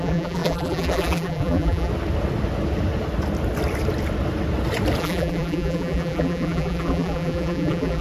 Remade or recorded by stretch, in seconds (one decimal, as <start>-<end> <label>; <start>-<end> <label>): 0.0-1.9 remade; 1.9-5.0 recorded; 5.0-8.0 remade